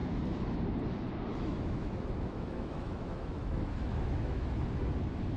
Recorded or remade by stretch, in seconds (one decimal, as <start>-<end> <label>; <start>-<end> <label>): 0.0-0.6 remade; 0.6-1.3 recorded; 1.3-4.5 remade; 4.5-5.4 recorded